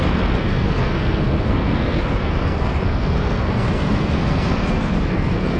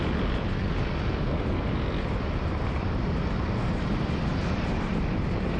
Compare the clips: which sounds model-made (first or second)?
first